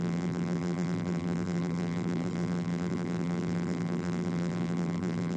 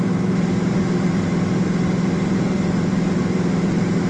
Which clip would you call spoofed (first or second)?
first